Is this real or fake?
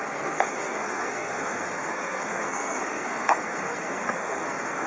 fake